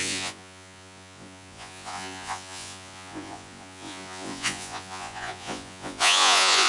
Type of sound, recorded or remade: remade